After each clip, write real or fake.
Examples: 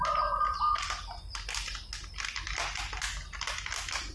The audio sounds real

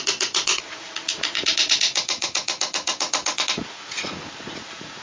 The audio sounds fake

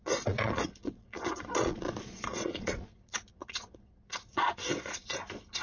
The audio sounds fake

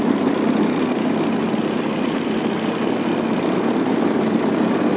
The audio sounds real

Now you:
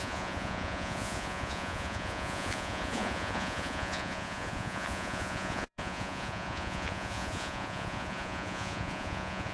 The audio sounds fake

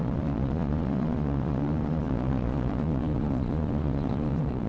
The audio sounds fake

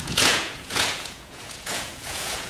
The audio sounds fake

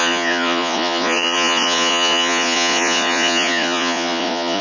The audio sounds fake